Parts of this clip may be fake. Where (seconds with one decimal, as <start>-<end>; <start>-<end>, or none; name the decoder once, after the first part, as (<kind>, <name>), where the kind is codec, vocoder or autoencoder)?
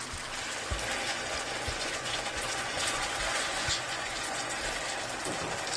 1.1-4.6 (vocoder, Vocos)